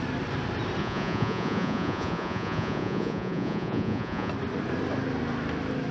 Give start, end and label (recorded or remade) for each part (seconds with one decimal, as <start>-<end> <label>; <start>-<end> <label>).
0.0-0.8 recorded; 0.8-4.3 remade; 4.3-5.9 recorded